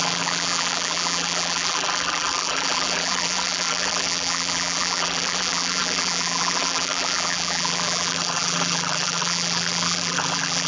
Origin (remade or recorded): remade